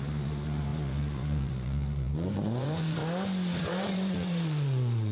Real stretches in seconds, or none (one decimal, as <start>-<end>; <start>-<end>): 3.0-3.6